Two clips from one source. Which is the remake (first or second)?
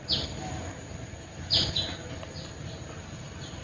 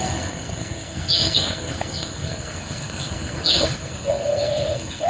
second